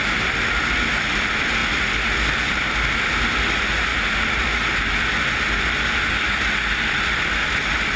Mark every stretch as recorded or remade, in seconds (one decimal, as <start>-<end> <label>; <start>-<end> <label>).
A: 0.0-8.0 recorded